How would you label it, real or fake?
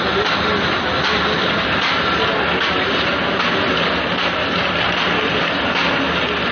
real